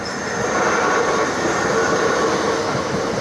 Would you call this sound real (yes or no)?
yes